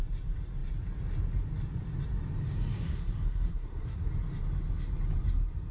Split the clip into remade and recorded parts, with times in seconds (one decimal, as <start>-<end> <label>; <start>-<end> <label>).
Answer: 0.0-2.7 recorded; 2.7-4.1 remade; 4.1-5.7 recorded